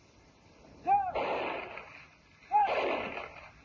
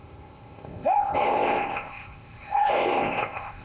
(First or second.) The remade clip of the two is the second